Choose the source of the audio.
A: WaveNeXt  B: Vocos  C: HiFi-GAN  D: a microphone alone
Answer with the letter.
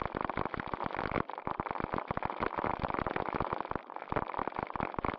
D